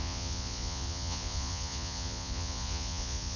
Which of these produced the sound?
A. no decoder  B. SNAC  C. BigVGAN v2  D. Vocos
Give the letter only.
D